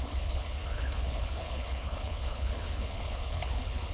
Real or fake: fake